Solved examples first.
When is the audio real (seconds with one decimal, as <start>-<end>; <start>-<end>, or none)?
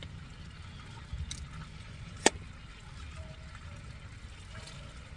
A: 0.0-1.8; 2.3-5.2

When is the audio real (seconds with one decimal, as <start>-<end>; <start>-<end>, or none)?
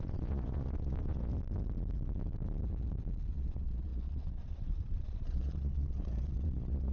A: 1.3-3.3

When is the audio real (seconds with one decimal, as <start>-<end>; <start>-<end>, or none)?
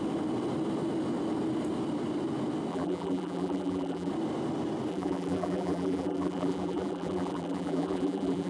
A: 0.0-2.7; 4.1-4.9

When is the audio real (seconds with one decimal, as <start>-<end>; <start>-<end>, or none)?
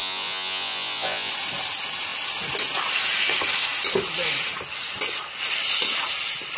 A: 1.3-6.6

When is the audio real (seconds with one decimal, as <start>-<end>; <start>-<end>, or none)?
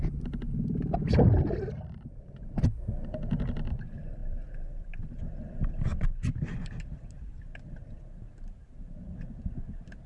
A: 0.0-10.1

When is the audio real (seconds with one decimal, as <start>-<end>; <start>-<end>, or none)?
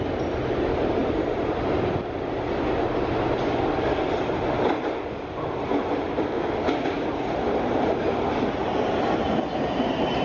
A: 0.0-10.2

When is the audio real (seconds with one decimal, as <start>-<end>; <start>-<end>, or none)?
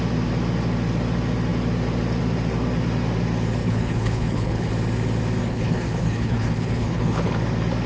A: 0.0-3.6; 4.7-5.4; 7.3-7.9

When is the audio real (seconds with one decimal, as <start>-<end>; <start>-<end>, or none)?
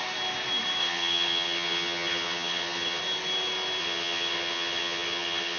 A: 0.0-0.8; 3.0-3.8